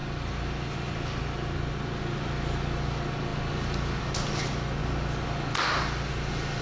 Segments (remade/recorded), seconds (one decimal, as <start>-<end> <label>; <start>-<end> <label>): 0.0-6.6 recorded